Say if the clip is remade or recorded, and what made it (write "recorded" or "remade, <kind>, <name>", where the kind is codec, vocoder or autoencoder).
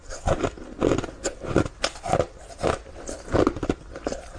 recorded